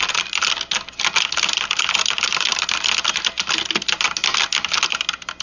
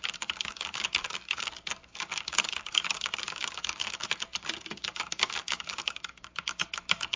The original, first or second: first